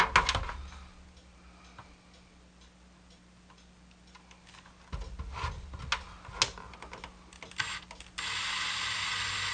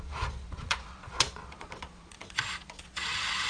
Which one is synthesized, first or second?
second